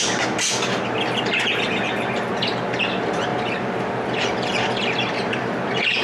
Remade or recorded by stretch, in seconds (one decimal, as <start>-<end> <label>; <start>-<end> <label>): 0.0-6.0 recorded